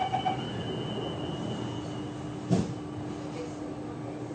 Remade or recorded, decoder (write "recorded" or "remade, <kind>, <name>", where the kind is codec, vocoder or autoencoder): recorded